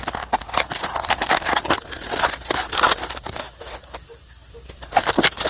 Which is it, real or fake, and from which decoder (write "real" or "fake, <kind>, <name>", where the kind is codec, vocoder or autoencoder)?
real